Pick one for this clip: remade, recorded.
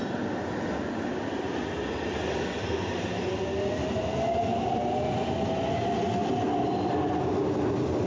recorded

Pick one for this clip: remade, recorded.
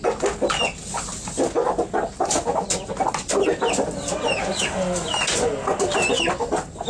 recorded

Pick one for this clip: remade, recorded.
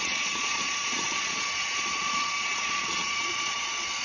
remade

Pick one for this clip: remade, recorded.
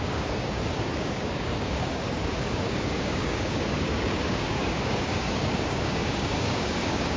remade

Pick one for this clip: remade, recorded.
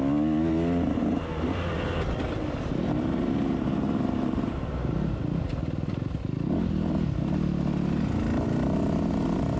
recorded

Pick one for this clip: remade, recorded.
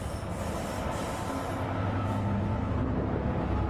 recorded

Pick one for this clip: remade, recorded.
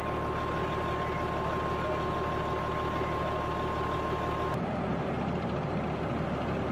recorded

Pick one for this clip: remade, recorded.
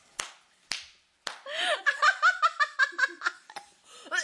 recorded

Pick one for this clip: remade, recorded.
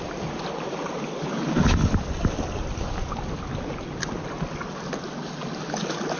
recorded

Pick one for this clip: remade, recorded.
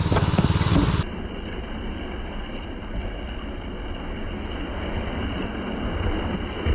recorded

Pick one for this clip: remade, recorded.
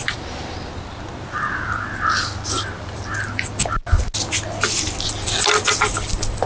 recorded